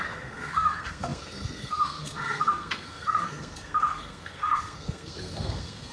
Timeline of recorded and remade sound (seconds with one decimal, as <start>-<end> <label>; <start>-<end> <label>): 0.0-5.9 remade